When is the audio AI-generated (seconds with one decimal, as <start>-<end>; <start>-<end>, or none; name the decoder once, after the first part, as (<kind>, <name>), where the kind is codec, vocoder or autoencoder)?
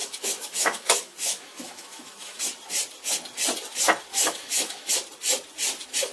0.0-2.4 (autoencoder, DAC-VAE); 4.1-4.9